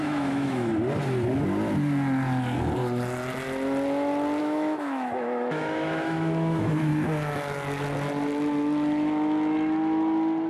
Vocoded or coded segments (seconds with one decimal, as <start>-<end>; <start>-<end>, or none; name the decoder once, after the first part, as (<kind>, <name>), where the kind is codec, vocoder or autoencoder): 0.0-0.7 (autoencoder, DAC-VAE); 4.4-6.9